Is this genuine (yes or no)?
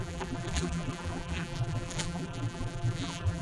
no